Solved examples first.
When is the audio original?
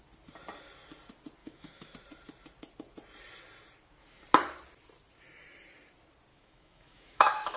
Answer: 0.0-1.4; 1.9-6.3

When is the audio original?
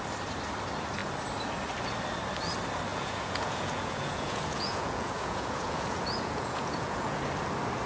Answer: 0.0-2.9; 7.2-7.9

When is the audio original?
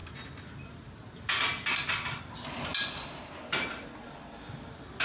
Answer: 0.0-5.0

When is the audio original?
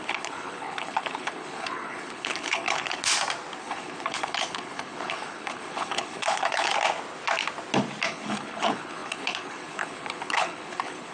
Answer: 3.0-3.6; 6.7-8.1